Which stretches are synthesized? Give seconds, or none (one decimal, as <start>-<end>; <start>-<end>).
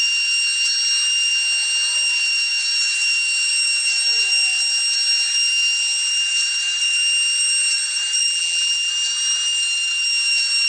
8.2-8.9